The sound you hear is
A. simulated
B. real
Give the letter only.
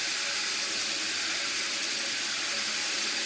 B